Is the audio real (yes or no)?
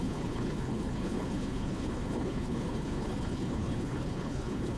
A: no